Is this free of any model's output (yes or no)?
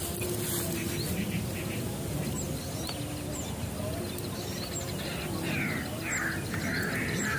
yes